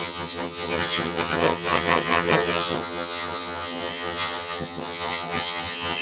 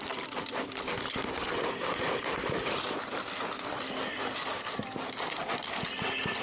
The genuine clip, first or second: second